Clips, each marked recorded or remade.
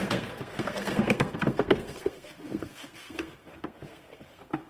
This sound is remade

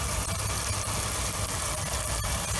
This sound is recorded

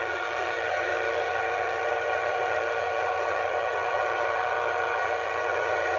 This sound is remade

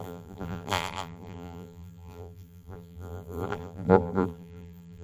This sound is remade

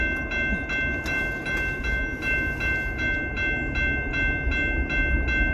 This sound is recorded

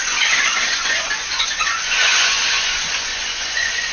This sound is remade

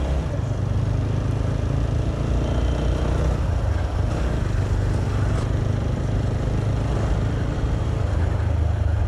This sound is recorded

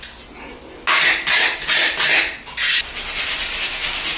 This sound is recorded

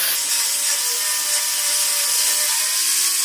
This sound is recorded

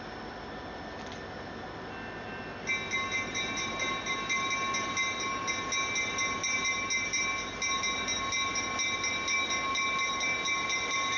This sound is recorded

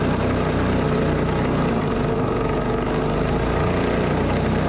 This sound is recorded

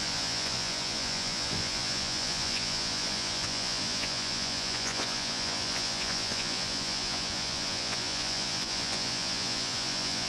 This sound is remade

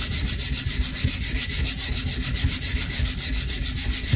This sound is recorded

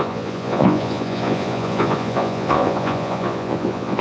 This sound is remade